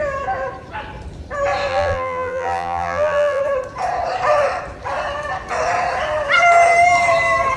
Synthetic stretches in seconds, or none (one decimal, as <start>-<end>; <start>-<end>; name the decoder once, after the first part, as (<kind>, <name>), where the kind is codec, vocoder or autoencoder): 1.7-3.4 (vocoder, BigVGAN v2)